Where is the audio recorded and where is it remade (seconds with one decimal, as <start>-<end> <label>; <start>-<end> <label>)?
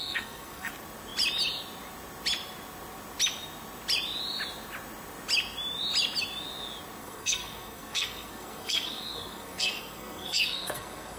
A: 0.0-0.7 remade; 0.7-7.0 recorded; 7.0-11.2 remade